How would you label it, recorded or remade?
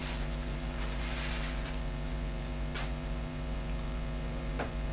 remade